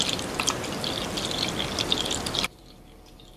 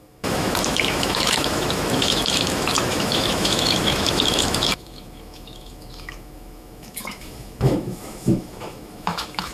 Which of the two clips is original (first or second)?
first